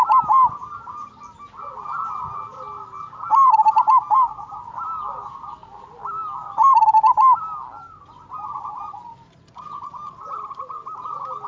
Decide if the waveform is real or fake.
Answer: real